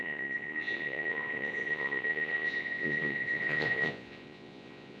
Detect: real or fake fake